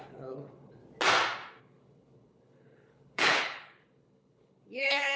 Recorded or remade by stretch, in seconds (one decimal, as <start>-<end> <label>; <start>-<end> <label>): 0.0-0.8 remade; 0.8-1.6 recorded; 1.6-5.2 remade